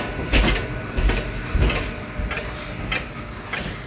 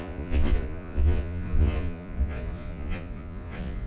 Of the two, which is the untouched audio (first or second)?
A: first